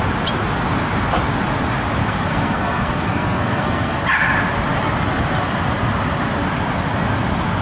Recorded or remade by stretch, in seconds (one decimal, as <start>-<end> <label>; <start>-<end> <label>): 0.0-2.0 recorded; 2.0-4.0 remade; 4.0-7.6 recorded